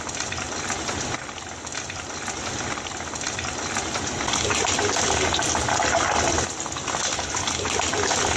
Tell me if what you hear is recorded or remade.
recorded